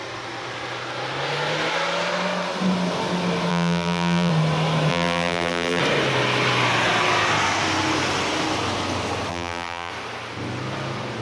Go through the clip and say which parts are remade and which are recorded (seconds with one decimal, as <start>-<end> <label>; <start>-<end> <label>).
0.0-3.5 recorded; 3.5-4.3 remade; 4.3-4.9 recorded; 4.9-5.8 remade; 5.8-9.3 recorded; 9.3-9.9 remade; 9.9-11.2 recorded